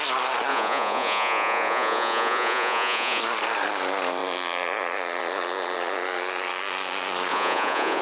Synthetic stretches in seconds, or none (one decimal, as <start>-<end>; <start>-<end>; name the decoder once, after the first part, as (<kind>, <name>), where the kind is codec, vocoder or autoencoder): 0.5-3.2 (vocoder, Vocos); 7.3-8.0